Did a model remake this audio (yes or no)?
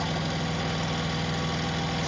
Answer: no